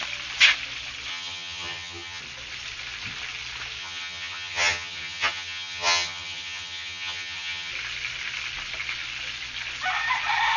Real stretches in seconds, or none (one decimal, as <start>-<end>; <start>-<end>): 0.0-1.1; 2.2-3.8; 7.7-10.6